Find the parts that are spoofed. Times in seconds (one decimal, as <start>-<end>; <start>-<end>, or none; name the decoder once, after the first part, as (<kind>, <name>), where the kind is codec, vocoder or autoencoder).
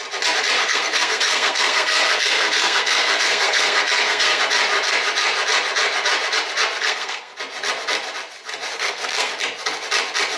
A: 0.6-4.4 (codec, SNAC); 6.8-7.3; 8.7-9.3